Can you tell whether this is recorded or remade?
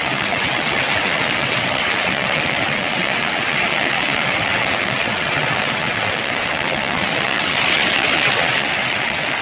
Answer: remade